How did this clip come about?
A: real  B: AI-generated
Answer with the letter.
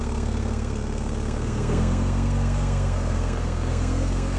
B